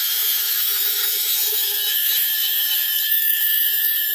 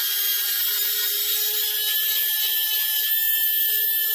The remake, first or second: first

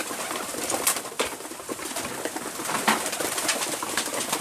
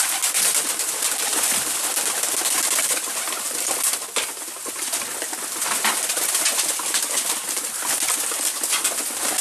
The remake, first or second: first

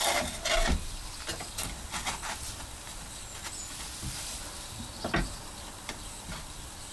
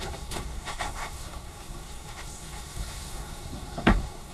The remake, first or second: second